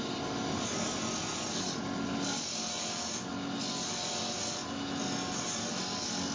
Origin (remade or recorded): recorded